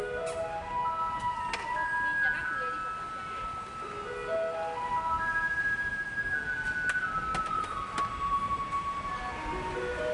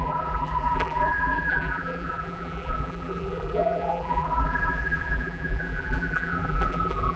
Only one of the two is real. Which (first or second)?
first